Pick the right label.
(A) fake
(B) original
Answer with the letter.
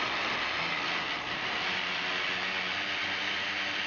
B